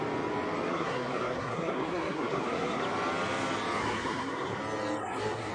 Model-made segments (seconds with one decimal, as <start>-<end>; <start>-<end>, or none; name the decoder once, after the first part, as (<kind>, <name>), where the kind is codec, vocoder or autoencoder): 0.7-2.8 (codec, SNAC); 3.8-4.6; 5.0-5.5